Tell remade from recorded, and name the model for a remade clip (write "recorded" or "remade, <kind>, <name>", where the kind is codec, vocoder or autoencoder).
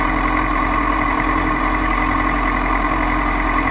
remade, vocoder, BigVGAN v2